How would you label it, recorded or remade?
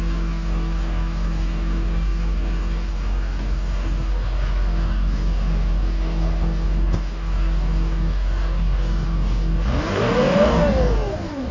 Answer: remade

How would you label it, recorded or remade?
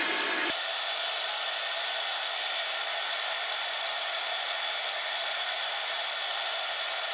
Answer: recorded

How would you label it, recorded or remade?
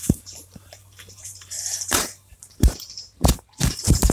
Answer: remade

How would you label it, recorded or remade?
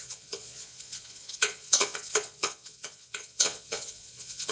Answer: remade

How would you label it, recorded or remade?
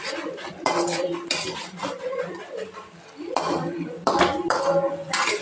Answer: remade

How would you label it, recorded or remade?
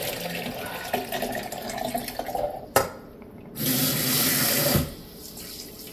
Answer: recorded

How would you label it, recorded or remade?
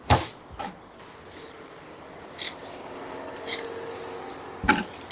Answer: recorded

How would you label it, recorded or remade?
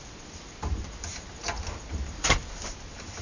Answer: recorded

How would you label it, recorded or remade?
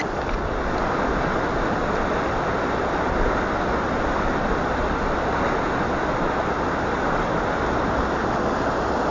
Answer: recorded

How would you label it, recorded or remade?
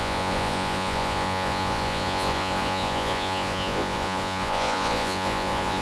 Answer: remade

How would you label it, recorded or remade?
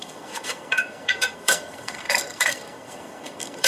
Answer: remade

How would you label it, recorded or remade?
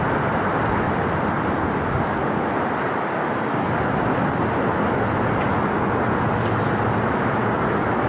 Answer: recorded